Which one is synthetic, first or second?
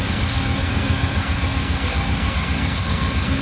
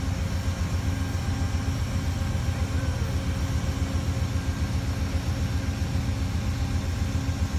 first